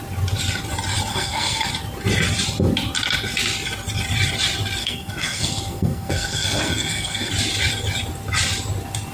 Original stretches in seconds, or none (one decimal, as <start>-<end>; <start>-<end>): 0.0-1.1; 1.7-4.8; 7.3-9.1